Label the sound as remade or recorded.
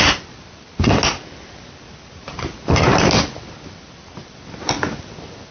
recorded